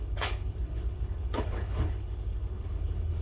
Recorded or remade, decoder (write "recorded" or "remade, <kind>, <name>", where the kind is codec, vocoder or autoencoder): remade, codec, HILCodec